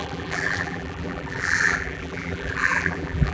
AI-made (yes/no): yes